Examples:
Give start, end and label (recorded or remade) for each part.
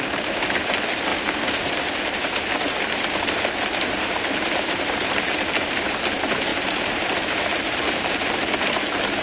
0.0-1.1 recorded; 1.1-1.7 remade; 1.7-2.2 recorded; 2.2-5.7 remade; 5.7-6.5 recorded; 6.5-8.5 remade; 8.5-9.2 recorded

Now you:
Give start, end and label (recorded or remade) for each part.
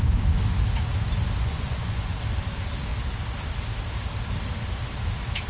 0.0-1.4 recorded; 1.4-2.1 remade; 2.1-5.5 recorded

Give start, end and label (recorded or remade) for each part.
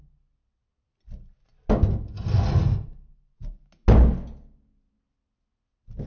0.0-6.1 recorded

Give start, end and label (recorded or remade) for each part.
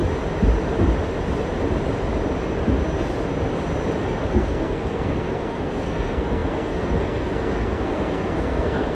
0.0-4.3 recorded; 4.3-8.9 remade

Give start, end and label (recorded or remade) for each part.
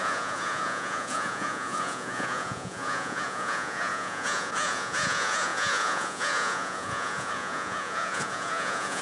0.0-9.0 remade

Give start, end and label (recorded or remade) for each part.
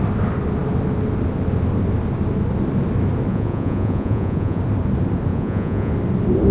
0.0-3.3 recorded; 3.3-4.6 remade; 4.6-5.3 recorded; 5.3-5.9 remade; 5.9-6.5 recorded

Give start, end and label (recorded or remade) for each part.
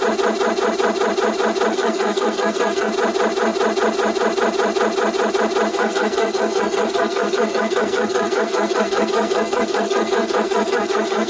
0.0-1.7 recorded; 1.7-2.9 remade; 2.9-5.7 recorded; 5.7-11.3 remade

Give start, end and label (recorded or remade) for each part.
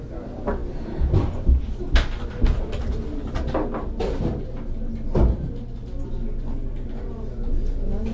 0.0-8.1 recorded